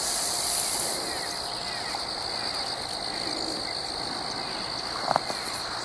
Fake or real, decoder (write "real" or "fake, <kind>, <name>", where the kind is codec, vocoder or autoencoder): real